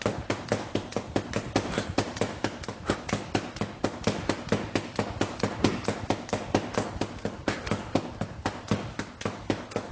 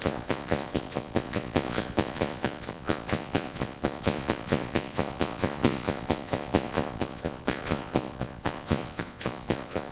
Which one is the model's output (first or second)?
second